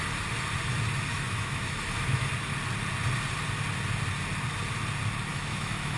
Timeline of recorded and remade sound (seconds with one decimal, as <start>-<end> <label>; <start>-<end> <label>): 0.0-1.1 recorded; 1.1-2.3 remade; 2.3-5.3 recorded; 5.3-6.0 remade